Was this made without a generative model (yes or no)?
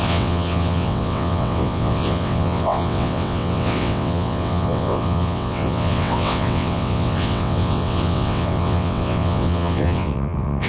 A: no